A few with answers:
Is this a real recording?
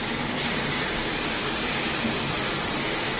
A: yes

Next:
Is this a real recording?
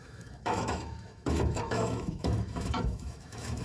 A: no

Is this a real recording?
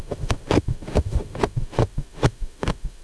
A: no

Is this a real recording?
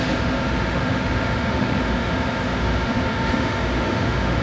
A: no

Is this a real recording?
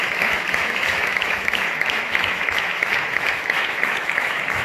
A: no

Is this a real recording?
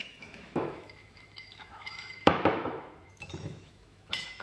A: no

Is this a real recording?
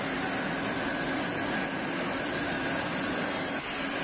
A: yes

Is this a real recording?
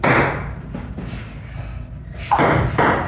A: yes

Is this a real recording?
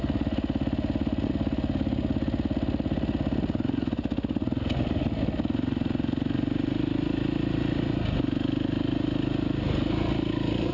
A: yes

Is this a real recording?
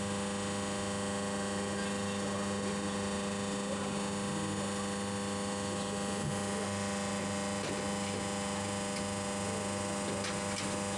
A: yes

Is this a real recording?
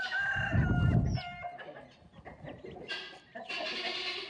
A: yes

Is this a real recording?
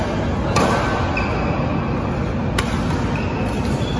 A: yes